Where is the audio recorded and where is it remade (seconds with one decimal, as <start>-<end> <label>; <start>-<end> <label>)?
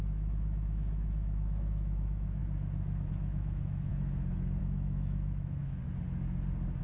0.0-2.4 remade; 2.4-3.1 recorded; 3.1-3.9 remade; 3.9-4.6 recorded; 4.6-5.8 remade; 5.8-6.8 recorded